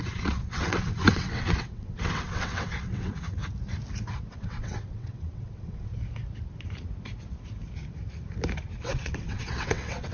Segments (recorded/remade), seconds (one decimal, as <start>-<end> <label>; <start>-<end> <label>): 0.0-3.4 remade; 3.4-4.1 recorded; 4.1-5.9 remade; 5.9-8.8 recorded; 8.8-10.1 remade

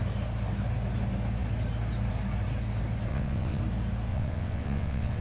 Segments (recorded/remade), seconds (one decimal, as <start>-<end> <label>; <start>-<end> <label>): 0.0-3.1 recorded; 3.1-3.6 remade; 3.6-4.1 recorded; 4.1-5.2 remade

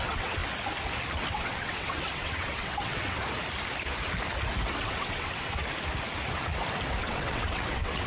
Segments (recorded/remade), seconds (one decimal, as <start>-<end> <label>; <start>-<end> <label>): 0.0-0.4 remade; 0.4-1.3 recorded; 1.3-3.2 remade; 3.2-4.8 recorded; 4.8-5.6 remade; 5.6-7.0 recorded; 7.0-8.1 remade

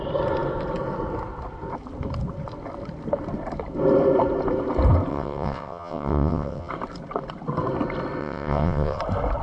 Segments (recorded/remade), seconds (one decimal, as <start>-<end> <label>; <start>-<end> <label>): 0.0-5.1 recorded; 5.1-6.7 remade; 6.7-8.2 recorded; 8.2-9.0 remade; 9.0-9.4 recorded

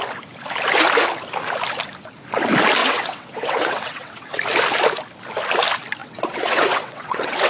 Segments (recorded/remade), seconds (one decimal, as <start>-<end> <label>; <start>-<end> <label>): 0.0-2.8 recorded; 2.8-4.4 remade; 4.4-6.0 recorded; 6.0-7.5 remade

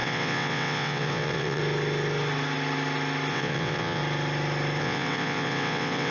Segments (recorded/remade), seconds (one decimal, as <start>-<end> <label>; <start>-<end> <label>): 0.0-1.6 remade; 1.6-3.3 recorded; 3.3-4.0 remade; 4.0-4.8 recorded; 4.8-6.1 remade

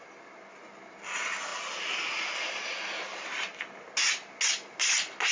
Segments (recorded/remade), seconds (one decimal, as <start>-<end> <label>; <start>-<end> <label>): 0.0-5.3 recorded